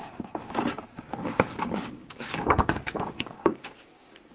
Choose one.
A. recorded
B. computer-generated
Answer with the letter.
B